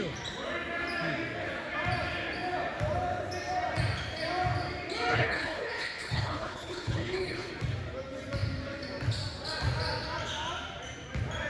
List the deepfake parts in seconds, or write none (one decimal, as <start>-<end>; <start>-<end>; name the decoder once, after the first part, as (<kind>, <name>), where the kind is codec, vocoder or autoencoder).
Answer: 5.1-7.5 (codec, HILCodec)